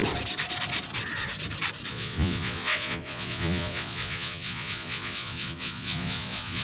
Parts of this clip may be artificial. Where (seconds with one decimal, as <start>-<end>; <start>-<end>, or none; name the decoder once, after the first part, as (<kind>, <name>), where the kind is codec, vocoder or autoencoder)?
1.9-6.6 (vocoder, Vocos)